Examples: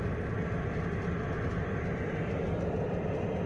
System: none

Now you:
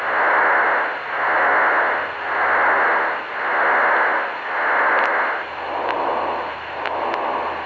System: none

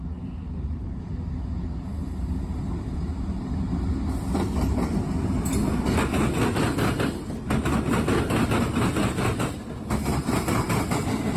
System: none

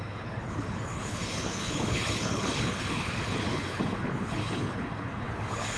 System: codec, HILCodec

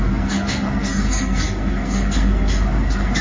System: codec, SNAC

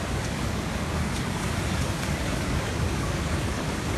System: codec, DAC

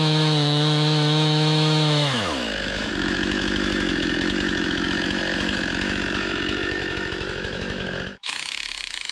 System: autoencoder, DAC-VAE